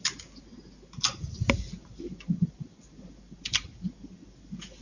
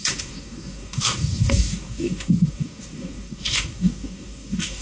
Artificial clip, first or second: second